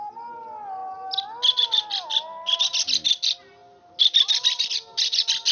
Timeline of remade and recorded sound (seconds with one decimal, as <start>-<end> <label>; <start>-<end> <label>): 0.0-5.5 recorded